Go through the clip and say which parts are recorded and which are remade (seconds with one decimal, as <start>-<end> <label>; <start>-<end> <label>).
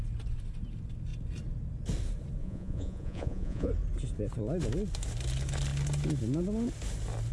0.0-2.4 recorded; 2.4-3.7 remade; 3.7-7.3 recorded